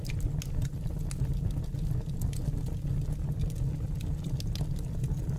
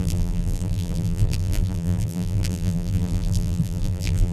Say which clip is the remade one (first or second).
second